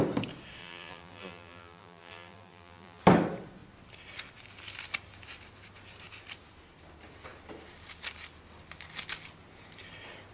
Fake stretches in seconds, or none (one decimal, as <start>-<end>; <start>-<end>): 0.6-3.0

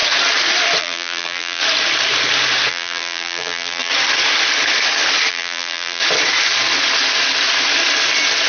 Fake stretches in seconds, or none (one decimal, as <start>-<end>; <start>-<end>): 0.8-1.6; 2.7-3.9; 5.3-6.0

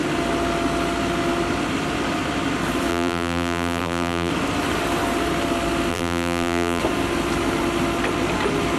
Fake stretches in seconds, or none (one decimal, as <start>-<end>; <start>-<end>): 2.9-4.3; 5.9-6.8

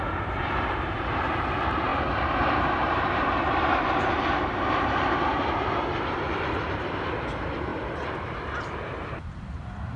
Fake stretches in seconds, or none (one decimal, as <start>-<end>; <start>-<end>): 0.0-7.7; 9.1-10.0